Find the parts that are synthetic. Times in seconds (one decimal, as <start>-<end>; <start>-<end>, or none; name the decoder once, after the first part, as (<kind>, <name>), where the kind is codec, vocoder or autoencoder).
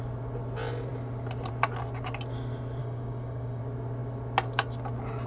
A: 2.8-3.6 (codec, DAC)